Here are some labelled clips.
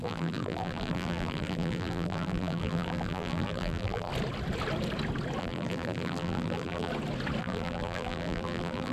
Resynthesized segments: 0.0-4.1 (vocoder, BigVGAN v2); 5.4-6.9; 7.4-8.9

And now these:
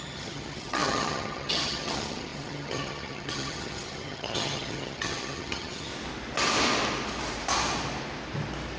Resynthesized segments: 0.0-5.9 (vocoder, HiFi-GAN)

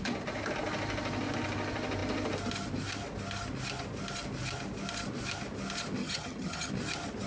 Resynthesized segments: 6.0-6.7 (vocoder, HiFi-GAN)

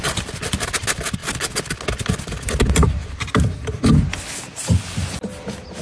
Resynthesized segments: none

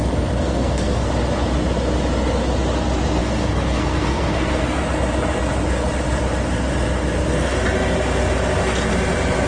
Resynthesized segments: 0.0-1.1 (codec, SNAC); 3.2-4.8

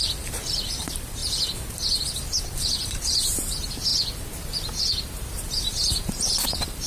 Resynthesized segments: 0.0-1.2 (vocoder, BigVGAN v2); 1.7-3.9; 5.5-6.9